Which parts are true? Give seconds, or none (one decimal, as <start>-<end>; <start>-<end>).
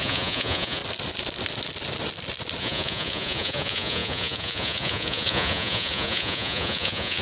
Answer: 0.8-2.6